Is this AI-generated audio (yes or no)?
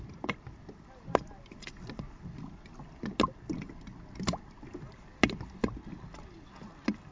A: no